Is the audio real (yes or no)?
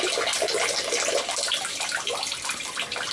no